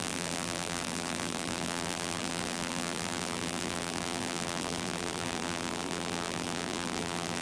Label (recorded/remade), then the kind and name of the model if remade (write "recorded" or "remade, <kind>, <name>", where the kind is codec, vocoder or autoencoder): remade, vocoder, BigVGAN v2